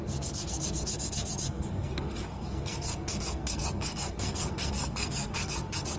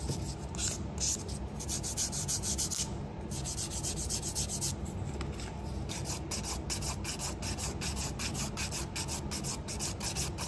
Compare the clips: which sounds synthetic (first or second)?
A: first